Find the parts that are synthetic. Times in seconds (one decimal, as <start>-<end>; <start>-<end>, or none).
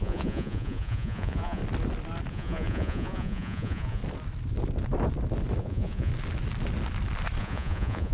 0.0-1.6; 2.3-4.0; 5.6-6.1; 7.4-8.1